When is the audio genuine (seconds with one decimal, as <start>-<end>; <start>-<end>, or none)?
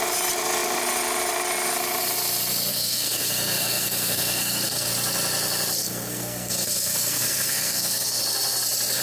0.0-2.7; 4.9-5.8; 8.2-9.0